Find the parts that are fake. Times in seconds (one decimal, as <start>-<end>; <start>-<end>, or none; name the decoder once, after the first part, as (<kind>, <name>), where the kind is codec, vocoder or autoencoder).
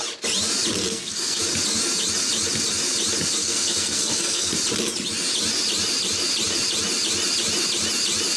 0.8-1.4 (codec, SNAC); 3.4-4.5